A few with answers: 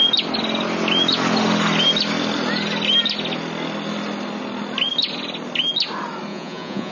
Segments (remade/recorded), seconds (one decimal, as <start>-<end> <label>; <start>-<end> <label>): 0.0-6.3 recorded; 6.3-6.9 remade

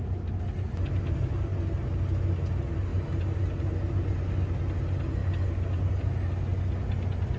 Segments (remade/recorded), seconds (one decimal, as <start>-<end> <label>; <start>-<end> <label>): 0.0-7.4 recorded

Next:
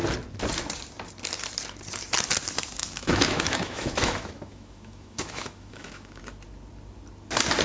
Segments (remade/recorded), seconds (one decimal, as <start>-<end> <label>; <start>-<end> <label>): 0.0-2.8 recorded; 2.8-6.2 remade; 6.2-7.6 recorded

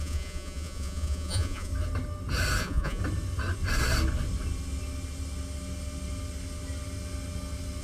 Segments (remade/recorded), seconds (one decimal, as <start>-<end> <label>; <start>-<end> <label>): 0.0-1.7 remade; 1.7-2.6 recorded; 2.6-3.0 remade; 3.0-7.8 recorded

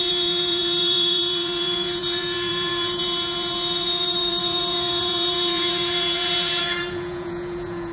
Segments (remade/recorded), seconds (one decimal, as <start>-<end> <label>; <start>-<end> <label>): 0.0-7.9 remade

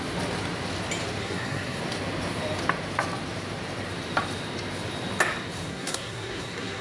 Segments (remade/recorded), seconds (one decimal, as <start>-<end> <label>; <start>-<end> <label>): 0.0-1.2 recorded; 1.2-1.8 remade; 1.8-5.7 recorded; 5.7-6.8 remade

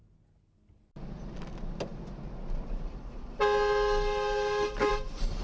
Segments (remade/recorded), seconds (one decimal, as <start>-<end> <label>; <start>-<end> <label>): 0.0-5.4 recorded